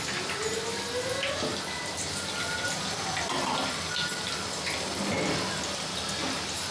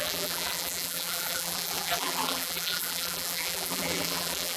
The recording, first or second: first